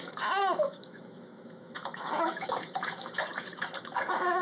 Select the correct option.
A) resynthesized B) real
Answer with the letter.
A